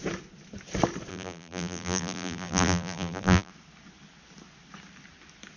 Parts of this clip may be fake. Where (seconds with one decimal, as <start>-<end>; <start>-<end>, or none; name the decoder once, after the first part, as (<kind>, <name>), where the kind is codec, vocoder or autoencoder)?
1.1-3.5 (vocoder, BigVGAN v2)